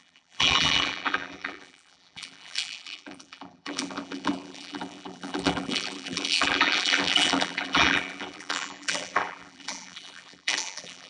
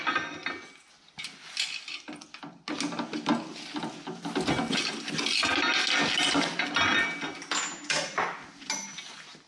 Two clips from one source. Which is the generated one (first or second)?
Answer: first